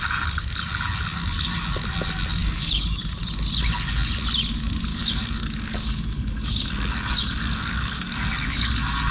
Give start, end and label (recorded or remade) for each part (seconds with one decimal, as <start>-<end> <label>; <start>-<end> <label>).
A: 0.0-2.4 recorded; 2.4-3.2 remade; 3.2-4.9 recorded; 4.9-8.7 remade; 8.7-9.1 recorded

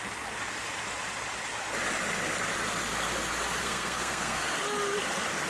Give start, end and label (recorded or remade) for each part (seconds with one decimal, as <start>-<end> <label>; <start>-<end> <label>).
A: 0.0-3.6 recorded; 3.6-4.6 remade; 4.6-5.5 recorded

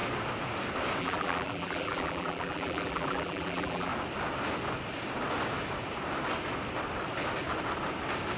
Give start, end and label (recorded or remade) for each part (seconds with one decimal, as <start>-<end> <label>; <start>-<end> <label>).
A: 0.0-1.0 recorded; 1.0-3.9 remade; 3.9-8.4 recorded

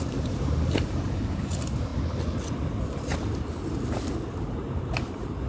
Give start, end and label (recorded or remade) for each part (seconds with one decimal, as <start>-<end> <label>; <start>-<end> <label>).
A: 0.0-1.9 remade; 1.9-4.6 recorded; 4.6-5.5 remade

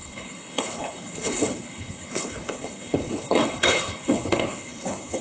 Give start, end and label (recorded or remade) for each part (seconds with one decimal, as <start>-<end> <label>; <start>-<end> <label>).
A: 0.0-5.2 remade

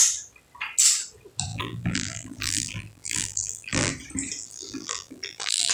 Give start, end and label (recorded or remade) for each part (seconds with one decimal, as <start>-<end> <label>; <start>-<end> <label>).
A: 0.0-1.5 recorded; 1.5-3.9 remade; 3.9-4.4 recorded; 4.4-5.7 remade

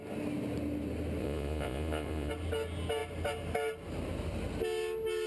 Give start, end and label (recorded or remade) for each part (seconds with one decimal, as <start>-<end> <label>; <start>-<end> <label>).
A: 0.0-1.2 recorded; 1.2-2.3 remade; 2.3-5.3 recorded